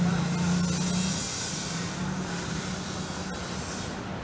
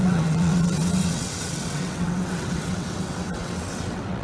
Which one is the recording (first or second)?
first